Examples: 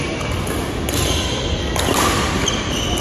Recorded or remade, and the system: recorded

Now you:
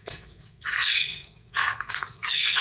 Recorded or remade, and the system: remade, codec, SNAC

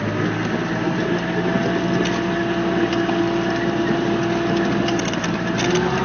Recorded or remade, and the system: recorded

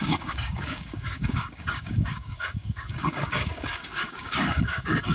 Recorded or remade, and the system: remade, codec, DAC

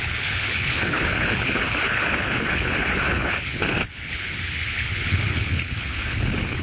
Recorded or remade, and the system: remade, codec, HILCodec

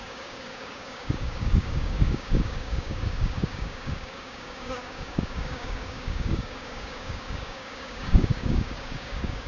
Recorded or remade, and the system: remade, codec, DAC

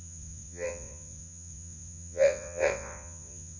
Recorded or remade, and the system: remade, vocoder, WaveNeXt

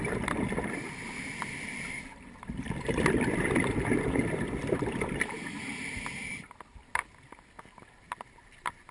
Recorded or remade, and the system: recorded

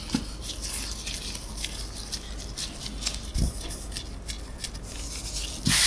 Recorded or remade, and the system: recorded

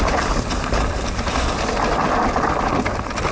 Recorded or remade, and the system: recorded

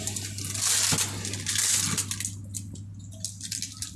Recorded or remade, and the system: recorded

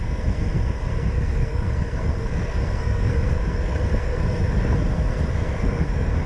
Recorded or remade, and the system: remade, codec, SNAC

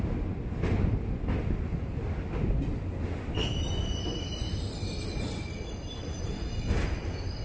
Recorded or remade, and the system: recorded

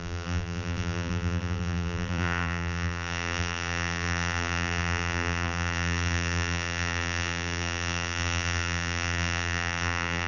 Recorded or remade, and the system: remade, vocoder, BigVGAN v2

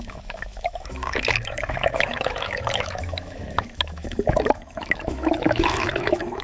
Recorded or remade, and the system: remade, autoencoder, DAC-VAE